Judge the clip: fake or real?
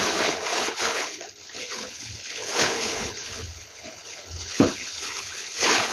fake